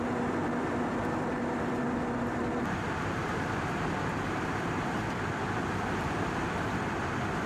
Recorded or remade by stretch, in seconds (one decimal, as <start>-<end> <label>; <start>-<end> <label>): 0.0-0.9 recorded; 0.9-2.4 remade; 2.4-7.5 recorded